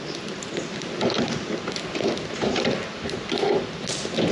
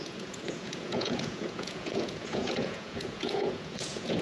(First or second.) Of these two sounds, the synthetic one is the second